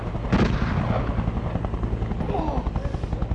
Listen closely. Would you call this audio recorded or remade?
recorded